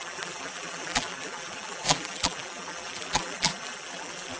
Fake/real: fake